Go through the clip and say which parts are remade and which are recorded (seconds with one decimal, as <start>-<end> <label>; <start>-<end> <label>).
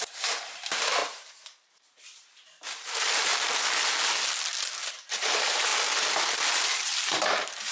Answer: 0.0-3.3 remade; 3.3-5.2 recorded; 5.2-5.7 remade; 5.7-6.5 recorded; 6.5-7.7 remade